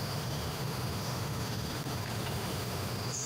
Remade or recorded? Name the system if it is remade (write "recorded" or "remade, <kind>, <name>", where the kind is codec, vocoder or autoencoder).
remade, autoencoder, DAC-VAE